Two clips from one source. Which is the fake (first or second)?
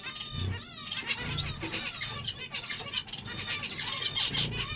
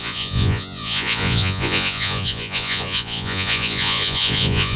second